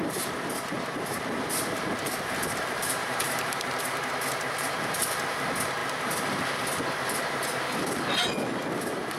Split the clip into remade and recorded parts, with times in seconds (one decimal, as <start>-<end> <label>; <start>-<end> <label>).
0.0-2.8 recorded; 2.8-3.8 remade; 3.8-9.2 recorded